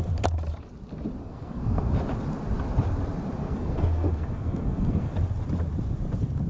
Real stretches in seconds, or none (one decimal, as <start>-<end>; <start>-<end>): 0.0-1.2; 1.9-3.4; 5.1-6.5